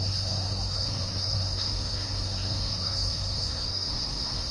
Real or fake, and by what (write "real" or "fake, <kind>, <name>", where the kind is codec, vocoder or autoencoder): fake, codec, SNAC